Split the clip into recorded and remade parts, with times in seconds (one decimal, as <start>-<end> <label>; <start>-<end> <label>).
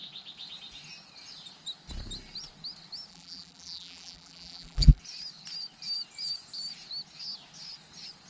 0.0-3.1 recorded; 3.1-5.0 remade; 5.0-8.3 recorded